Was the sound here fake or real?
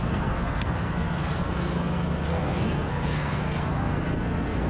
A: fake